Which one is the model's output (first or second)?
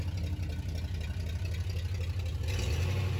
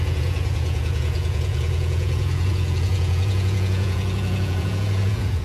second